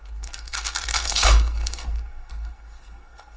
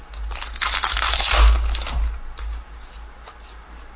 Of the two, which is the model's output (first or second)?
first